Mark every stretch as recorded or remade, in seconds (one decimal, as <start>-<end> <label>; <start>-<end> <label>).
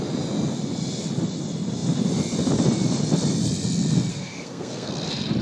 0.0-4.1 recorded; 4.1-4.9 remade; 4.9-5.4 recorded